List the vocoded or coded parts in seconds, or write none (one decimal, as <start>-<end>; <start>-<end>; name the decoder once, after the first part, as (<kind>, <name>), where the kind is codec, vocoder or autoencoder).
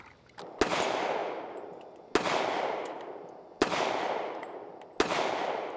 none